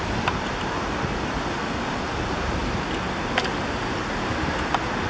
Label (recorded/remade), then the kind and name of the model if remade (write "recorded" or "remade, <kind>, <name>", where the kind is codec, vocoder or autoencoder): recorded